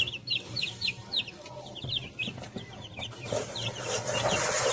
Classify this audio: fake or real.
real